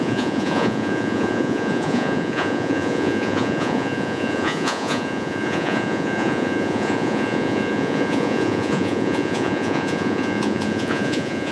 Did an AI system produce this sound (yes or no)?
yes